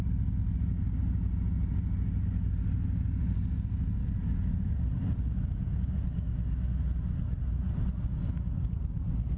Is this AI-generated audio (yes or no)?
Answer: no